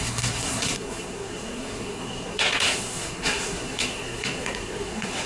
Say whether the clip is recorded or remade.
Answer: remade